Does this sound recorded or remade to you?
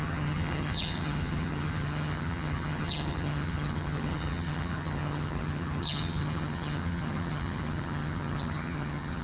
remade